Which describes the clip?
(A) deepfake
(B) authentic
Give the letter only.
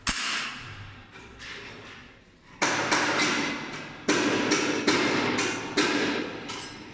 B